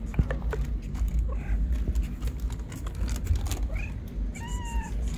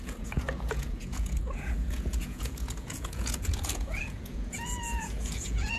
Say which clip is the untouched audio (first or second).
first